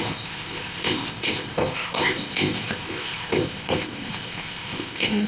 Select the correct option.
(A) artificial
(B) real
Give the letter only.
A